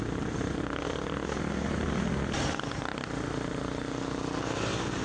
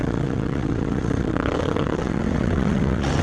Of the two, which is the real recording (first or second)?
first